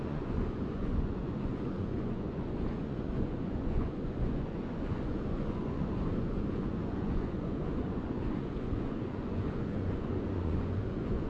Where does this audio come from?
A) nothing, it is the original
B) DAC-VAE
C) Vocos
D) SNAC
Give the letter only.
C